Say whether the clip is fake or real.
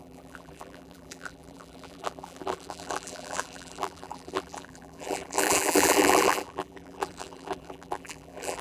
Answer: fake